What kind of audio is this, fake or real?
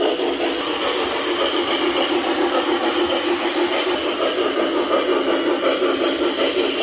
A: real